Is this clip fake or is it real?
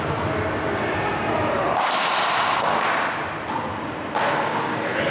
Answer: real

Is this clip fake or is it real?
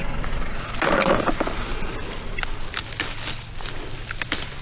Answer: real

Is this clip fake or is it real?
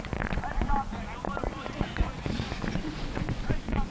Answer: fake